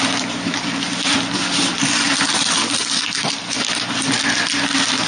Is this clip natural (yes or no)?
yes